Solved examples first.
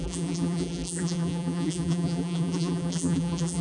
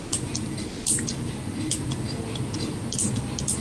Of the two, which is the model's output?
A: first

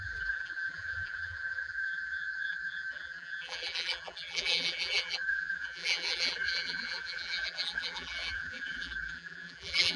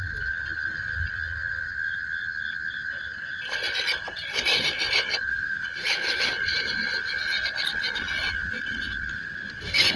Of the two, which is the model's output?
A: first